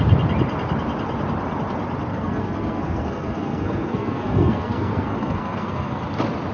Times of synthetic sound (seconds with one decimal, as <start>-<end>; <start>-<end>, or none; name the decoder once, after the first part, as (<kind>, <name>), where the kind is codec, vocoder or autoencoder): 2.1-6.0 (codec, SNAC)